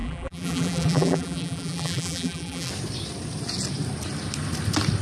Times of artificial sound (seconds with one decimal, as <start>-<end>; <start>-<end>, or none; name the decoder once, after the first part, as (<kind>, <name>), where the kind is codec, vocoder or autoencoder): 0.0-2.7 (vocoder, BigVGAN v2)